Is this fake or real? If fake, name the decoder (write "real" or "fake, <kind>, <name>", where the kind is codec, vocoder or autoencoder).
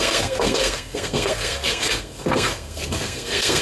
fake, codec, SNAC